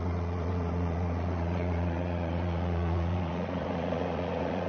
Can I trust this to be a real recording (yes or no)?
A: no